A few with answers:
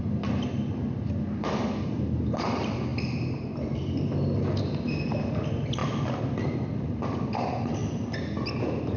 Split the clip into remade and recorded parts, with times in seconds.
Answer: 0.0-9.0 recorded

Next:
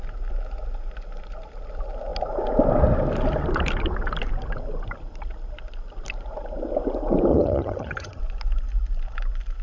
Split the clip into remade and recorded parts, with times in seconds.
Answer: 0.0-7.3 recorded; 7.3-8.2 remade; 8.2-9.6 recorded

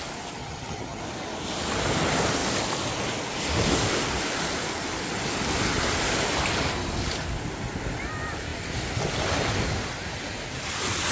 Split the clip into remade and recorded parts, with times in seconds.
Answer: 0.0-0.4 recorded; 0.4-1.0 remade; 1.0-11.1 recorded